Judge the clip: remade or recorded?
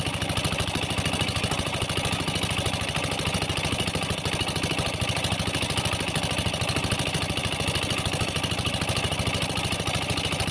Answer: recorded